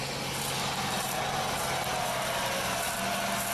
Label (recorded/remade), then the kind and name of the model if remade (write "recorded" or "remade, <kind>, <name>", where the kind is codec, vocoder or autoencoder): recorded